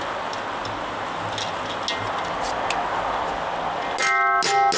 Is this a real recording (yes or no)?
yes